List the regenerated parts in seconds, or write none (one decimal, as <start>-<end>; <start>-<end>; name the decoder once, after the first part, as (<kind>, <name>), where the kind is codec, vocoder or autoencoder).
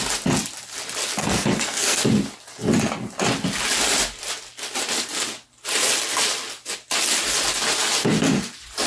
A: 1.2-2.0 (codec, SNAC)